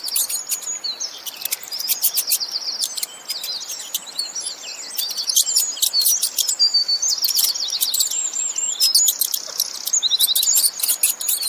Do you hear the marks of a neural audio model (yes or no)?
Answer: no